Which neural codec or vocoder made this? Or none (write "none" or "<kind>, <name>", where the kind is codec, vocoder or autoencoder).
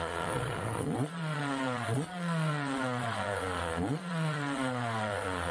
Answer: vocoder, Vocos